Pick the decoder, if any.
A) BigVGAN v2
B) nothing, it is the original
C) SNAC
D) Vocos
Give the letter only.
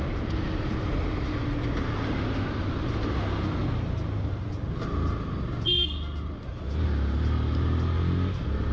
B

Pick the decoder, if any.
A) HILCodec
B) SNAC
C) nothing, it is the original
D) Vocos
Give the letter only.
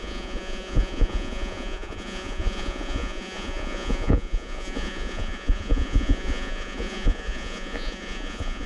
D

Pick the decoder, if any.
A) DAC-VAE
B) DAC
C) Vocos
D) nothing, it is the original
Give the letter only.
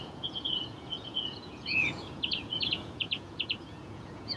C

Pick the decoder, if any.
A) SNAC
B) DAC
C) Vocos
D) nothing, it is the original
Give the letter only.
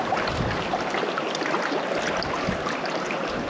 D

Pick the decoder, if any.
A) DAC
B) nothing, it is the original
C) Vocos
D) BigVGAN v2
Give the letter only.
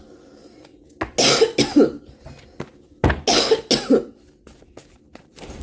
B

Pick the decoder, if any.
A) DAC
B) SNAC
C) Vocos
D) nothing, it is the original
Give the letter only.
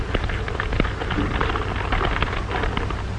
D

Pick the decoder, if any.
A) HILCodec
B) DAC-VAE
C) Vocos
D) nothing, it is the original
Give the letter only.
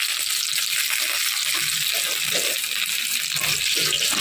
D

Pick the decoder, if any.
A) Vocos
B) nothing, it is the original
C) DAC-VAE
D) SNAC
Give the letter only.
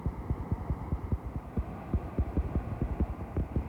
B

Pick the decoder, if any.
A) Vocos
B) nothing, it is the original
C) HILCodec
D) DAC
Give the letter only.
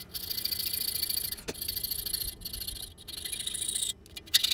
B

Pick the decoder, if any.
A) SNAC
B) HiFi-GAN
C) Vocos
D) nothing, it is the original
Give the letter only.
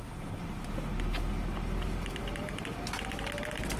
D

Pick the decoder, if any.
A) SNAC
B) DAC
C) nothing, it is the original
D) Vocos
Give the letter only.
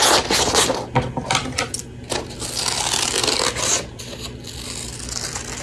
C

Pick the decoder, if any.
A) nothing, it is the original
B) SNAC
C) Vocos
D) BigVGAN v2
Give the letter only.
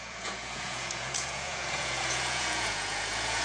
C